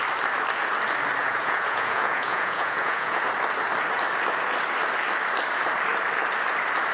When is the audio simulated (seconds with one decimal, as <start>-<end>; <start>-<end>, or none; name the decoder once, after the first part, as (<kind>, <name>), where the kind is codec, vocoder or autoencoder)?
1.2-3.2 (vocoder, Vocos)